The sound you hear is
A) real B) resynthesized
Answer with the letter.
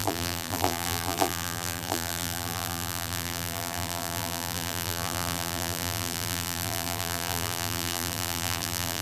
B